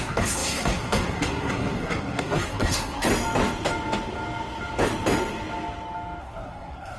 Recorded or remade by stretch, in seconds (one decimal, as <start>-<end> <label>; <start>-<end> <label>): 0.0-3.1 remade; 3.1-6.2 recorded; 6.2-7.0 remade